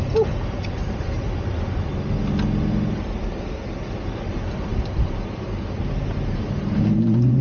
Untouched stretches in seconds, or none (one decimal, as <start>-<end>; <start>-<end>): 0.0-0.8; 1.3-4.7